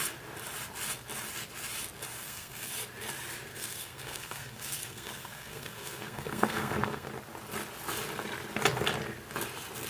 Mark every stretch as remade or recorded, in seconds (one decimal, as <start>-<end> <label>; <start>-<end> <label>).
0.0-2.2 recorded; 2.2-2.7 remade; 2.7-3.5 recorded; 3.5-7.1 remade; 7.1-9.9 recorded